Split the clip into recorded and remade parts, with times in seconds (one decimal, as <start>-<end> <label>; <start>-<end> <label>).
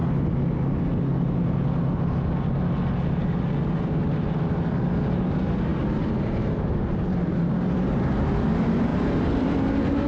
0.0-10.1 recorded